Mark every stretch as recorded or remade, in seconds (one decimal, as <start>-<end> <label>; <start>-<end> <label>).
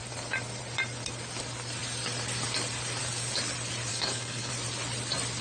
0.0-3.9 recorded; 3.9-4.5 remade; 4.5-5.4 recorded